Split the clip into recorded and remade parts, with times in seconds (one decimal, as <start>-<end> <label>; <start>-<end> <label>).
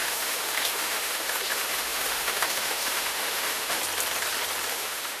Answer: 0.0-3.8 remade; 3.8-4.7 recorded; 4.7-5.2 remade